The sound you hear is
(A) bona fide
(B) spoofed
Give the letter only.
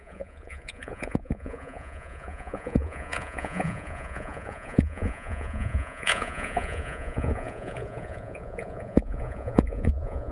B